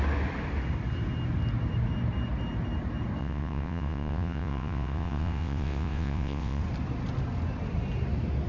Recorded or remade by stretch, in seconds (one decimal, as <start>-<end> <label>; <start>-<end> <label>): 0.0-3.2 recorded; 3.2-6.6 remade; 6.6-8.5 recorded